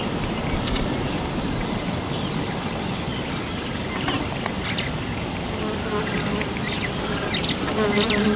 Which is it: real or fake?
real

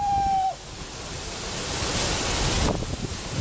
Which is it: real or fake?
real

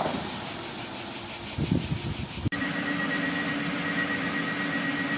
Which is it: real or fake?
real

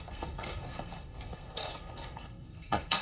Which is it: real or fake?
fake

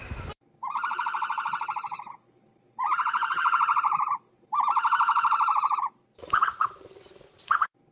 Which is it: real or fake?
fake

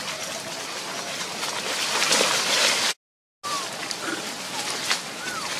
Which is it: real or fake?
real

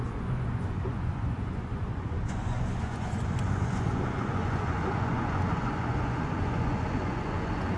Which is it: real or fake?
fake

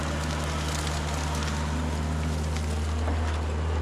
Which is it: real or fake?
real